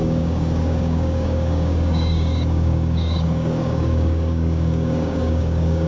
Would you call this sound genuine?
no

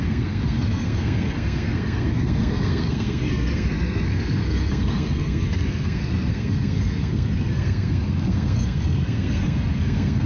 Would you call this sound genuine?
no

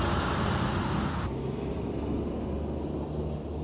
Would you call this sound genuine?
yes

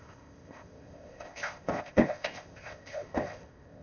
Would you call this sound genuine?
no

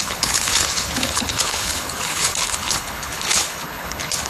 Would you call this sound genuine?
no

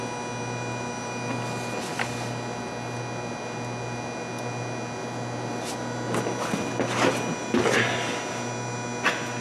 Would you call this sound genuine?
yes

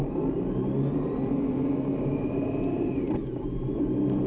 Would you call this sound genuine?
yes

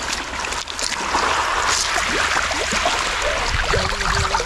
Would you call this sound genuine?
yes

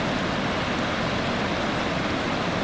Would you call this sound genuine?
yes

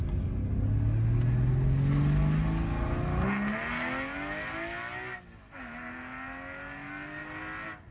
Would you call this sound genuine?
yes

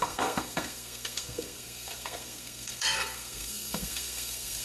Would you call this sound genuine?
no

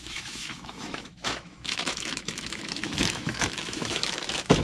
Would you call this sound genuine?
no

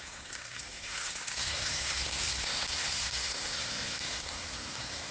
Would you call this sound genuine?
no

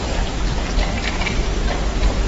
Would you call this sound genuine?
yes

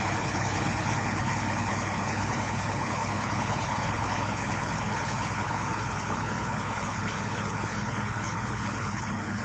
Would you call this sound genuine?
no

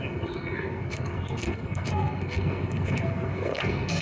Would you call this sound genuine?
no